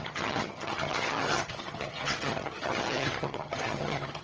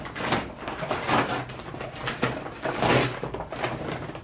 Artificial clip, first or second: first